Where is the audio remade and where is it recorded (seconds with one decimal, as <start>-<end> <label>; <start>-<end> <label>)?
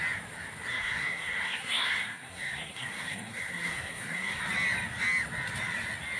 0.0-0.7 recorded; 0.7-4.4 remade; 4.4-6.2 recorded